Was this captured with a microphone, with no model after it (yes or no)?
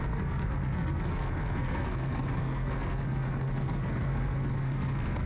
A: no